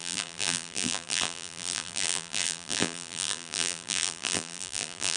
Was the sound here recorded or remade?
remade